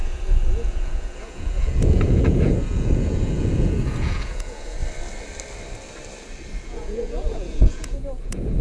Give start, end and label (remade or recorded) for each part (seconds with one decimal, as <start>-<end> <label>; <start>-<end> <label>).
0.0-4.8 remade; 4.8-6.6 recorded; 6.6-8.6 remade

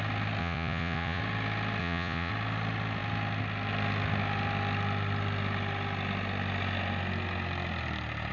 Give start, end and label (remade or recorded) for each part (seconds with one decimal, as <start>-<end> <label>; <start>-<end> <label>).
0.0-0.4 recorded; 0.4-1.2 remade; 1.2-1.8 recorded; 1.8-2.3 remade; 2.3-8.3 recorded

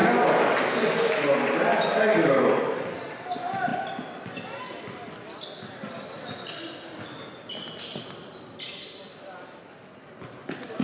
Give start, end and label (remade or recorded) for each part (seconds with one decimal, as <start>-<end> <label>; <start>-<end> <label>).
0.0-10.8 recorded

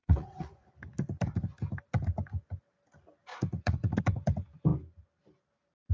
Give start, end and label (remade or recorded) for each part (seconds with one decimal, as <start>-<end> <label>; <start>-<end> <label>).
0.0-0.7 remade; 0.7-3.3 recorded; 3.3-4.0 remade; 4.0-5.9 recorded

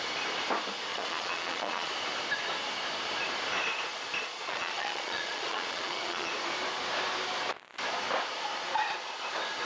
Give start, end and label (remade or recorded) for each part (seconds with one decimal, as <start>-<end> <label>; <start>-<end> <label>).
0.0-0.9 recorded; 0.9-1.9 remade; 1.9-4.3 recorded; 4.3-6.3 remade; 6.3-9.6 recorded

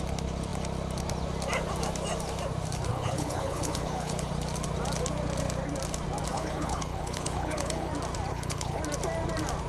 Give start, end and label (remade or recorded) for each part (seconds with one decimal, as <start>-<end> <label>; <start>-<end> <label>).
0.0-2.9 recorded; 2.9-4.3 remade; 4.3-6.3 recorded; 6.3-7.9 remade; 7.9-8.3 recorded; 8.3-8.8 remade; 8.8-9.7 recorded